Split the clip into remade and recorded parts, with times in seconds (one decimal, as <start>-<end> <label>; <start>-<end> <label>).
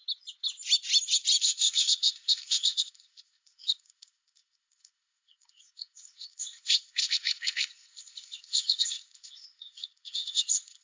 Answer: 0.0-1.4 recorded; 1.4-10.8 remade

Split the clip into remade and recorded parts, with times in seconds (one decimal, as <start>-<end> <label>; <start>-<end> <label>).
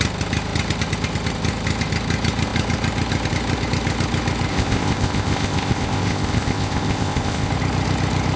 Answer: 0.0-4.5 recorded; 4.5-7.5 remade; 7.5-8.4 recorded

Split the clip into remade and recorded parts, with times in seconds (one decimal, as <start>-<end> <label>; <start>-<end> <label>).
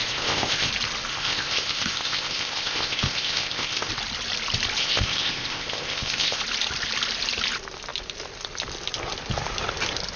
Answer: 0.0-0.7 remade; 0.7-1.1 recorded; 1.1-3.9 remade; 3.9-4.8 recorded; 4.8-6.4 remade; 6.4-10.2 recorded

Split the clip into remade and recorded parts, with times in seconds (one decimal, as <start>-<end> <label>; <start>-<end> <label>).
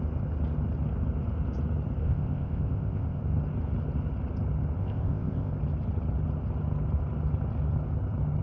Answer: 0.0-2.0 recorded; 2.0-3.2 remade; 3.2-4.8 recorded; 4.8-5.5 remade; 5.5-8.4 recorded